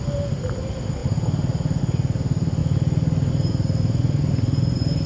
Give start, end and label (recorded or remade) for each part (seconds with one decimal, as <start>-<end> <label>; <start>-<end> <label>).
0.0-5.1 recorded